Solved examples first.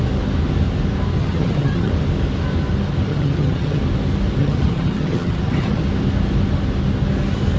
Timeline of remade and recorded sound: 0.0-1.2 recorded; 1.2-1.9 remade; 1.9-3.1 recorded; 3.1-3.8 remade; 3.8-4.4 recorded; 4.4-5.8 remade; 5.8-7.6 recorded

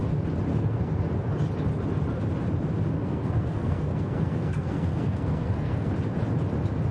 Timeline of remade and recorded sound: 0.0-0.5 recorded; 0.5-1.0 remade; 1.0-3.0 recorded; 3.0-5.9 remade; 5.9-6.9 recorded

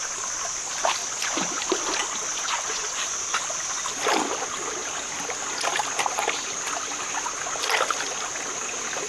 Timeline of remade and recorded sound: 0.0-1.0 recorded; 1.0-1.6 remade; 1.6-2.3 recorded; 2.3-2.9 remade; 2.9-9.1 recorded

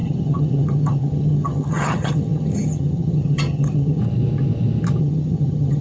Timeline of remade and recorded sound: 0.0-4.0 remade; 4.0-5.0 recorded; 5.0-5.8 remade

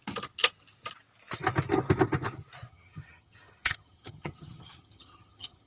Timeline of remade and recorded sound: 0.0-2.7 recorded; 2.7-5.7 remade